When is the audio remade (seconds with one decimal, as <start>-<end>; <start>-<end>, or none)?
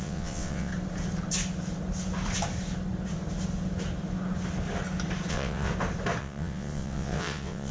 0.0-0.7; 5.3-5.7; 6.2-7.7